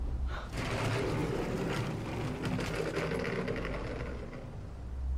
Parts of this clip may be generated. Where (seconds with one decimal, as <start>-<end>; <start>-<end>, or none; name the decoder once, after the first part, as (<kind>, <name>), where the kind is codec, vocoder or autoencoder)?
none